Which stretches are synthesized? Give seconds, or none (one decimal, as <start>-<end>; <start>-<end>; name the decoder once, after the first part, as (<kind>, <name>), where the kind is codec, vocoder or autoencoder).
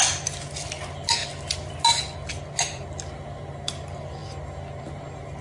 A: none